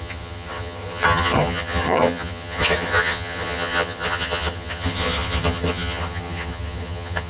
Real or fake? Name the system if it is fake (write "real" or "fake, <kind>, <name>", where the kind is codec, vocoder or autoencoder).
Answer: fake, vocoder, HiFi-GAN